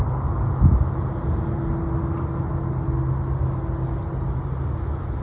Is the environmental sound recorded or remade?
recorded